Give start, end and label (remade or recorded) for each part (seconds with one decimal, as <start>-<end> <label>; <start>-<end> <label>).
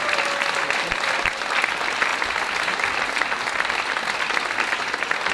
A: 0.0-5.3 recorded